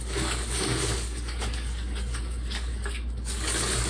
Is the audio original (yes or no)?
no